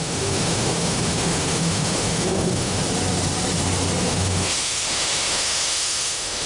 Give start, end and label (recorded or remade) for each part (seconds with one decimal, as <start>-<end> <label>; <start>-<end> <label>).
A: 0.0-2.8 remade; 2.8-4.0 recorded; 4.0-6.5 remade